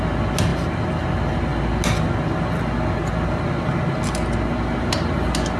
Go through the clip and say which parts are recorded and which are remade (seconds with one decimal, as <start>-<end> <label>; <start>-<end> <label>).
0.0-5.6 recorded